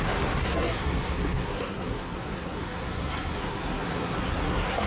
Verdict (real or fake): fake